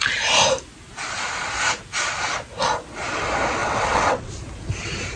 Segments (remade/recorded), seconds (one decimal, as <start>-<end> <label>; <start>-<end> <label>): 0.0-3.6 recorded; 3.6-4.3 remade; 4.3-5.2 recorded